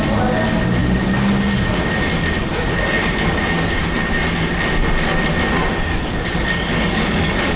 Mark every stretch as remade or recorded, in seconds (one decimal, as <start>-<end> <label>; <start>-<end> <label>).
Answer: 0.0-5.9 recorded; 5.9-7.6 remade